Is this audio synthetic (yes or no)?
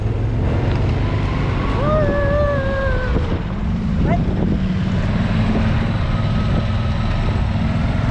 no